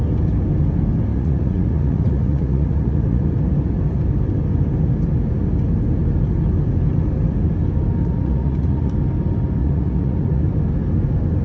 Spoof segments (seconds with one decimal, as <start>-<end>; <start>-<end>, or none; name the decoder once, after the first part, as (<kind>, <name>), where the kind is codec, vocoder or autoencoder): 1.1-3.2 (vocoder, Vocos); 8.0-8.9; 9.6-10.4

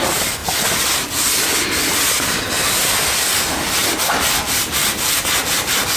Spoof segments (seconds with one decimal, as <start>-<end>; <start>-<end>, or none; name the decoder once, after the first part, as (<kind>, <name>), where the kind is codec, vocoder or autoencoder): 4.8-6.0 (vocoder, BigVGAN v2)

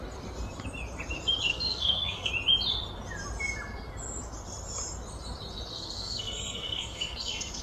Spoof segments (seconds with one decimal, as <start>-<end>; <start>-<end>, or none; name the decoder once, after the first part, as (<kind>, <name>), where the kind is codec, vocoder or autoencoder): 1.5-2.3 (codec, SNAC); 5.7-7.6

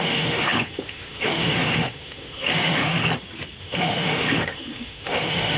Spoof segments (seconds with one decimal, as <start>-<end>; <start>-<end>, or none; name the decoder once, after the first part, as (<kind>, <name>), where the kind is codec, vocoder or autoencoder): 0.0-3.0 (autoencoder, DAC-VAE); 3.6-5.6